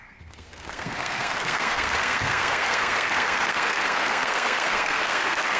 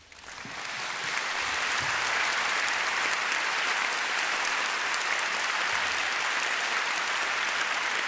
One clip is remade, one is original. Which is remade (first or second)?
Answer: first